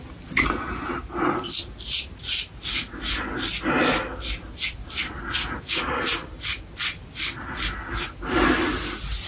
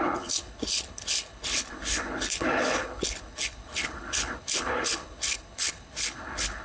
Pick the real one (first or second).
first